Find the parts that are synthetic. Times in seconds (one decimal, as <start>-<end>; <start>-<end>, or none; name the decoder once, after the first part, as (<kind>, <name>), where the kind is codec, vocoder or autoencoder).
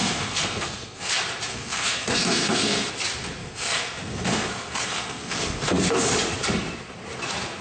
0.0-1.1 (codec, SNAC); 1.5-2.9; 3.4-5.9